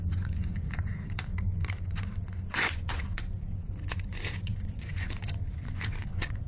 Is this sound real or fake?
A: fake